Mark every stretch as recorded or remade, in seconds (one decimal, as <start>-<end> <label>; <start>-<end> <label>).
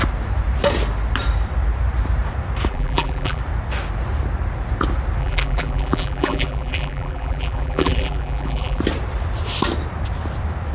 0.0-2.7 recorded; 2.7-3.4 remade; 3.4-5.2 recorded; 5.2-8.8 remade; 8.8-10.7 recorded